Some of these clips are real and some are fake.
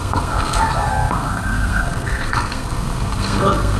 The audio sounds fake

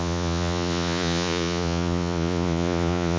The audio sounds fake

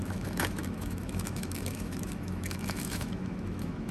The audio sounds fake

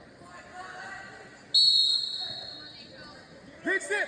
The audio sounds real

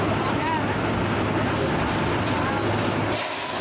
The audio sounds real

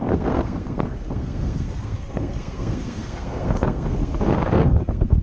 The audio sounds fake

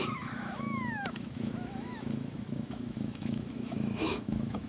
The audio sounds fake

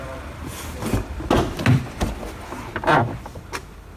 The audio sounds real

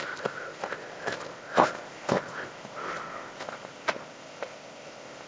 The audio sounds fake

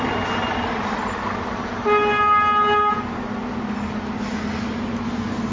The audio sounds real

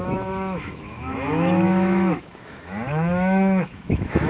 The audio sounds fake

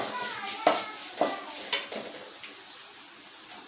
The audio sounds real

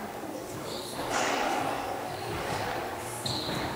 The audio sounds fake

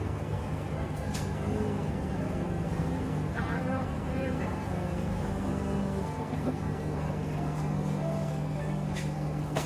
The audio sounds fake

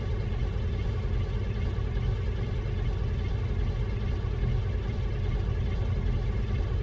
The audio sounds real